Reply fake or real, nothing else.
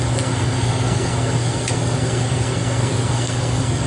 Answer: fake